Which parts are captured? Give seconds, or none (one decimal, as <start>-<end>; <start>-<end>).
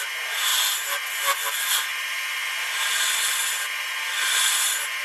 0.0-5.0